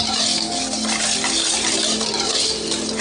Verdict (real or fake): real